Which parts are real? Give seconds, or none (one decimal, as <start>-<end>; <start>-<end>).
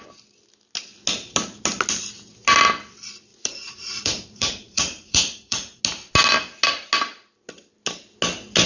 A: 0.0-3.3; 5.8-8.7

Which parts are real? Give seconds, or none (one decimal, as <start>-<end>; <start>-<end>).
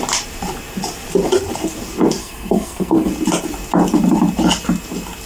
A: 0.0-2.2; 3.1-5.3